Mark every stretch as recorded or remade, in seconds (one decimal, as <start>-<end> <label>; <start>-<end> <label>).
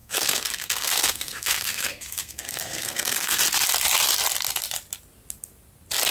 0.0-3.4 remade; 3.4-6.1 recorded